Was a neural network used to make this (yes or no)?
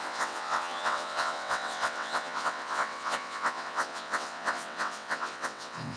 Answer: yes